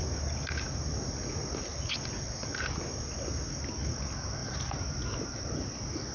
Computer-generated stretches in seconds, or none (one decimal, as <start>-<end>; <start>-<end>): none